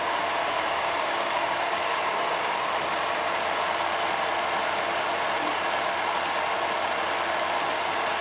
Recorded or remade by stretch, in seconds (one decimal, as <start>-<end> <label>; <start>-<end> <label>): 0.0-0.4 recorded; 0.4-2.7 remade; 2.7-8.2 recorded